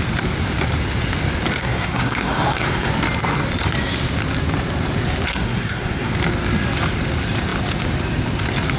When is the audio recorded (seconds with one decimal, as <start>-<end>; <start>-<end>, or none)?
0.0-1.6; 2.9-5.3; 6.1-8.8